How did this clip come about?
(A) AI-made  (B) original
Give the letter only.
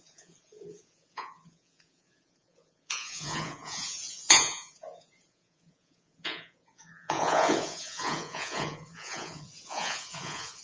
A